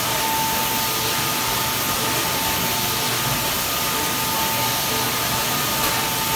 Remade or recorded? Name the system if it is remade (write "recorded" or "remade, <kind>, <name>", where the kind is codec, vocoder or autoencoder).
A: recorded